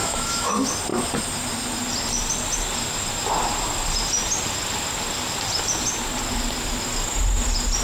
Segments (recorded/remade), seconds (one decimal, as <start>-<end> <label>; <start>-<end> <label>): 0.0-0.5 remade; 0.5-7.8 recorded